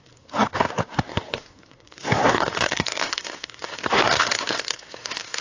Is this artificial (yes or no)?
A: yes